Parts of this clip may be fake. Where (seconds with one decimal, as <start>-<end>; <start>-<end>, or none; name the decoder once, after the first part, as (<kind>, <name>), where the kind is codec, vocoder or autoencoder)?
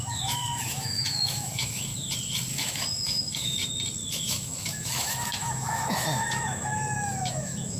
0.0-1.9 (autoencoder, DAC-VAE); 2.5-3.6; 4.1-7.8